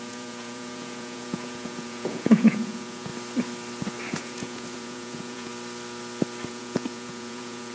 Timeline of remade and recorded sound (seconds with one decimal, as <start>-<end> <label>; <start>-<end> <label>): 0.0-3.1 remade; 3.1-4.1 recorded; 4.1-5.5 remade; 5.5-6.5 recorded; 6.5-7.7 remade